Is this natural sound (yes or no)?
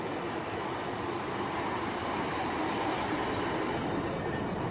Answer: yes